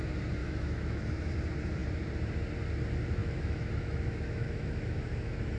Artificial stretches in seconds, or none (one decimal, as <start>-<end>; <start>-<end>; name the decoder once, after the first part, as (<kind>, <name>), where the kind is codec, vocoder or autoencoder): 0.4-1.3 (autoencoder, DAC-VAE); 3.2-5.6